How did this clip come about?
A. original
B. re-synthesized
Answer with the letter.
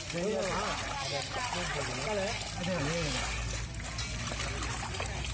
A